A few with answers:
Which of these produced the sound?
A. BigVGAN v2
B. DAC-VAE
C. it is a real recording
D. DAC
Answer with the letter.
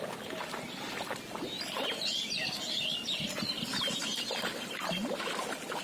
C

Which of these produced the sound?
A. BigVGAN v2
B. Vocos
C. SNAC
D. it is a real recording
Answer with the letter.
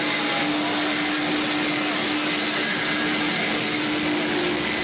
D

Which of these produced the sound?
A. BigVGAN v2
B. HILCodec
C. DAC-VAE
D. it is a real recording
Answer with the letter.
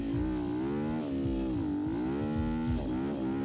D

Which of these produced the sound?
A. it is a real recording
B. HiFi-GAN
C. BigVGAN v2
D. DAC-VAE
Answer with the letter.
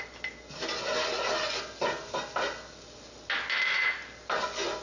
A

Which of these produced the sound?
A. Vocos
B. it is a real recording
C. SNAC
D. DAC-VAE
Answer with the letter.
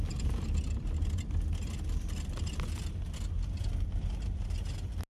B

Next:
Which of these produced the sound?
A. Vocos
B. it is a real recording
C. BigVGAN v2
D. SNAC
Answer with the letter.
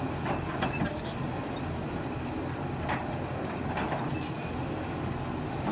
B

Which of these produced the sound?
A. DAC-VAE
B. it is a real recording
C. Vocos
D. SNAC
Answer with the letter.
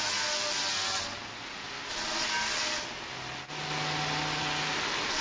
B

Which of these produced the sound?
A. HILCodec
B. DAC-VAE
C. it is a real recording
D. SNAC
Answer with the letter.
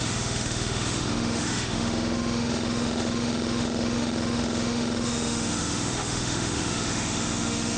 B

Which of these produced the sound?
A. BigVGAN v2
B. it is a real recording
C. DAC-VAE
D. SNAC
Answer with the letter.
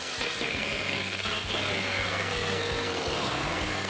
D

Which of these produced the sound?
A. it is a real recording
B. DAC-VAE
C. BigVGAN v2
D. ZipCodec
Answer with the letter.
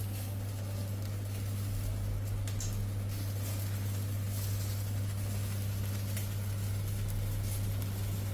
A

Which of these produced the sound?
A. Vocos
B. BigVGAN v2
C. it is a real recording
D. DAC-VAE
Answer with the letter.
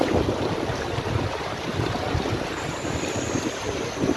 C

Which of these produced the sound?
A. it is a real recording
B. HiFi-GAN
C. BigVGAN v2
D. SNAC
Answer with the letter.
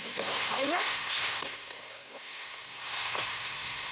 D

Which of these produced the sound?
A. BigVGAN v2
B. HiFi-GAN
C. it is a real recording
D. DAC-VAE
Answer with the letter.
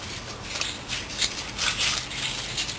C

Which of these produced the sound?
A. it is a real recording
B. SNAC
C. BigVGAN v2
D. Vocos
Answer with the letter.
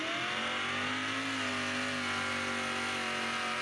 A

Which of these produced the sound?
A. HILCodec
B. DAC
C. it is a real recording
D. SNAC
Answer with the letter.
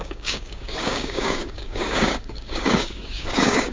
B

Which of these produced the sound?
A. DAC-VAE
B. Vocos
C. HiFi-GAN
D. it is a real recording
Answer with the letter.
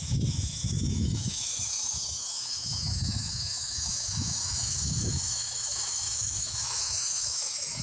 A